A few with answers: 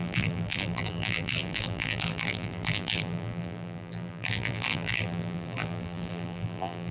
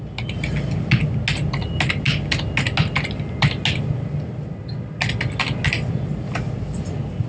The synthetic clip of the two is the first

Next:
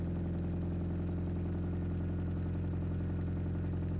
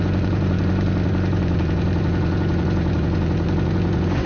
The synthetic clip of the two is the second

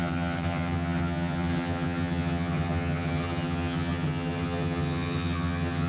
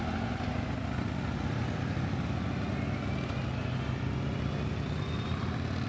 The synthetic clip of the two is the first